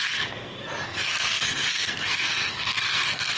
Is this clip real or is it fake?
fake